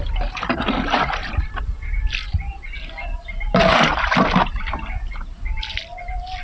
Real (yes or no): yes